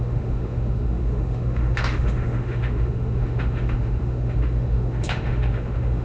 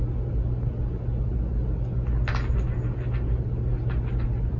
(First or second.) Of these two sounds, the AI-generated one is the first